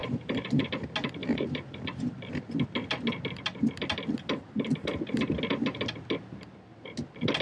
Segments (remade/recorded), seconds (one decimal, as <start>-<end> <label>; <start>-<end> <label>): 0.0-0.7 remade; 0.7-1.2 recorded; 1.2-2.3 remade; 2.3-7.4 recorded